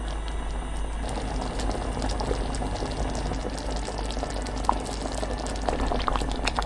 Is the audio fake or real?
real